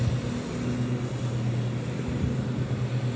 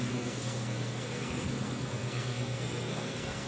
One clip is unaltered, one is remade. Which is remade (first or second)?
second